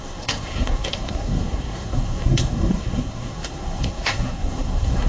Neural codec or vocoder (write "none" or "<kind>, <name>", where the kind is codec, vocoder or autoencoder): codec, SNAC